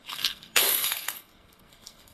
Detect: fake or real fake